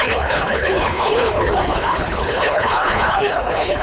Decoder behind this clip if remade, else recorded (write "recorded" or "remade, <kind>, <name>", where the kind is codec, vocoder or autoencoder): remade, codec, HILCodec